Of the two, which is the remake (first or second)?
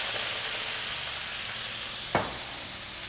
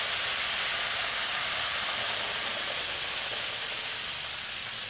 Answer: second